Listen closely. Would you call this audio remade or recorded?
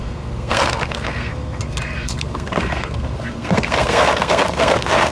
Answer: remade